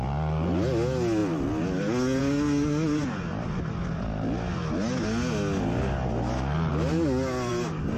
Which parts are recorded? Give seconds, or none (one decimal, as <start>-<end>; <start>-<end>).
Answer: 0.0-8.0